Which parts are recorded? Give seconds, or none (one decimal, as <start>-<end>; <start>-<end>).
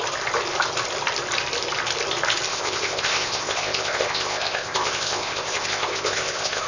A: 0.0-2.5